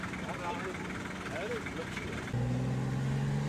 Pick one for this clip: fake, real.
real